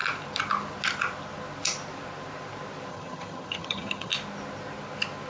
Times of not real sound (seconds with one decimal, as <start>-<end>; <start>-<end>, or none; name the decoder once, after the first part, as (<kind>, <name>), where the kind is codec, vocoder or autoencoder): 2.9-4.1 (vocoder, HiFi-GAN)